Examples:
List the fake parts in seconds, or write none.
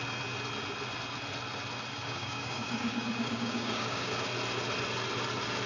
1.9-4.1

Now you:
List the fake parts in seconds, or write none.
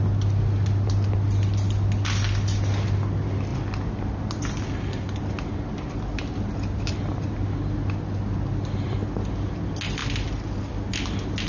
none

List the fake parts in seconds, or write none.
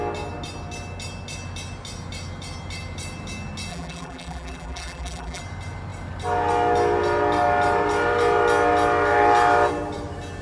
3.7-5.4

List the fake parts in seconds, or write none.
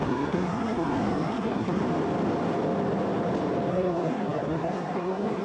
0.0-1.8; 3.7-5.4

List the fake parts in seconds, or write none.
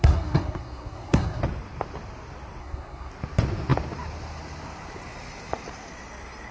0.0-1.4; 2.6-3.1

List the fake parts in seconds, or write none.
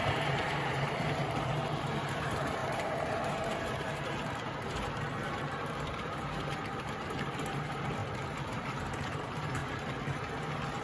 0.0-8.0; 8.8-9.6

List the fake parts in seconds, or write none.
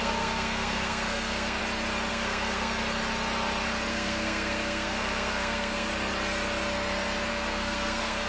0.0-1.6; 2.1-2.8; 3.9-5.9; 7.3-8.3